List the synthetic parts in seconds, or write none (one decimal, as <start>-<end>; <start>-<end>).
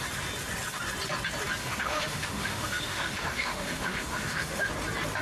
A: 1.6-4.7